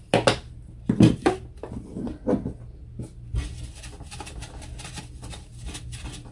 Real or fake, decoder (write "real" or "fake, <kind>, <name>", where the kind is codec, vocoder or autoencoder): real